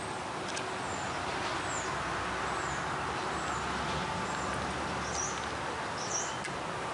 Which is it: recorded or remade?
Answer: recorded